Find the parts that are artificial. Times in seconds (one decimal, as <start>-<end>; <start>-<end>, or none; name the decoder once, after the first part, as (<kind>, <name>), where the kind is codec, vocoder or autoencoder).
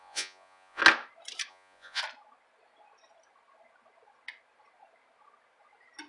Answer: 0.0-0.8 (vocoder, Vocos); 1.5-2.0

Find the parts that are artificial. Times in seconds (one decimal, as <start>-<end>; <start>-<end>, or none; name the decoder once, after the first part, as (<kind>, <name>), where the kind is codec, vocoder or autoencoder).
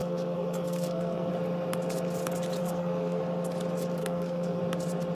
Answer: 0.0-1.3 (codec, SNAC); 2.6-3.2; 4.0-4.6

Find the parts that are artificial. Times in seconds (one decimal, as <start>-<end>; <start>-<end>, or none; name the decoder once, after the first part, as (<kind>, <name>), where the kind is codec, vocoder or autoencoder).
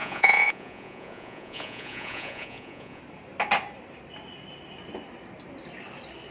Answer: 0.0-3.0 (vocoder, Vocos)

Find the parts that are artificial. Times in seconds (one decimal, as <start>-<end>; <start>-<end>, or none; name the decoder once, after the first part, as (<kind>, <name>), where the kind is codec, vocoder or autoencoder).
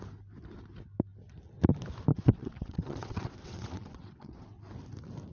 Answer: 2.1-4.6 (vocoder, WaveNeXt)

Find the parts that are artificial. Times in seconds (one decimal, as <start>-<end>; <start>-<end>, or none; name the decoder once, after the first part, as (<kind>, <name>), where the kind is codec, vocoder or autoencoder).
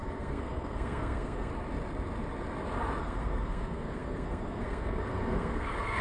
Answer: 0.0-1.5 (codec, SNAC); 3.0-6.0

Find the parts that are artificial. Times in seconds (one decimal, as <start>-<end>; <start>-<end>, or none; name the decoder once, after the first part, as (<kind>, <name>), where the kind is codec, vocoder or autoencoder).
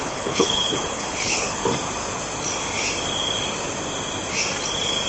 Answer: 0.0-1.6 (codec, HILCodec)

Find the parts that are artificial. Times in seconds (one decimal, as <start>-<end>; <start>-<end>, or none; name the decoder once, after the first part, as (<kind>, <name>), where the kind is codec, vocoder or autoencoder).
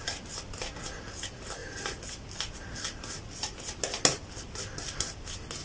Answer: none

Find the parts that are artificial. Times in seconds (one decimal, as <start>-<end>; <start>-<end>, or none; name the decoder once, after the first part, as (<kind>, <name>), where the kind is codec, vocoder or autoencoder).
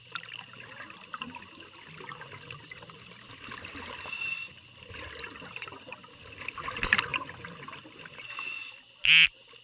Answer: none